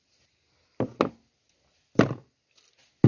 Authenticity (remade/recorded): recorded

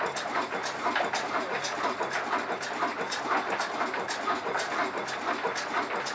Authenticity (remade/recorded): recorded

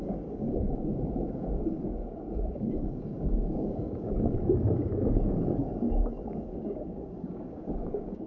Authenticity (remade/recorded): remade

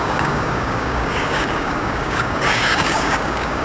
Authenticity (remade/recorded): remade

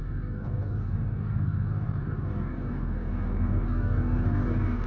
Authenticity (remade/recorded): remade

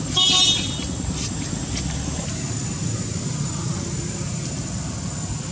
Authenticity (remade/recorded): recorded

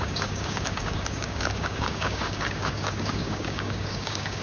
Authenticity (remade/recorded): remade